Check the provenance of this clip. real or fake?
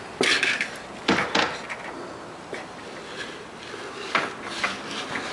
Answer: real